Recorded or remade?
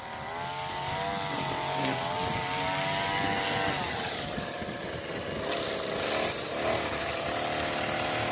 recorded